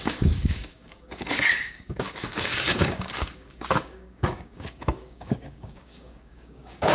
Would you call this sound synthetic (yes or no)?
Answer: yes